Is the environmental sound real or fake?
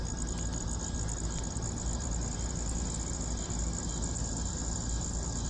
real